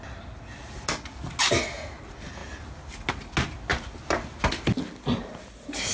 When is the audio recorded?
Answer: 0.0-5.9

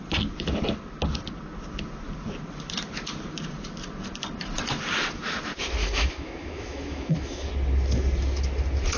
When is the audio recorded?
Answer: 0.0-5.8; 7.5-9.0

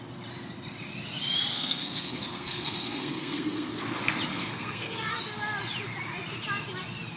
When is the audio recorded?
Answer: 0.0-1.5; 3.7-4.3; 5.2-7.2

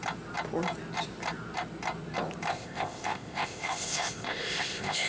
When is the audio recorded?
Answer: 0.0-2.5